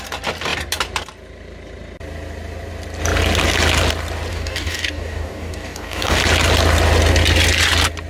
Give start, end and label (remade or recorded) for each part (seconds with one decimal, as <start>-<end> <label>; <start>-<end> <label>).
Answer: 0.0-4.3 recorded; 4.3-6.2 remade; 6.2-8.1 recorded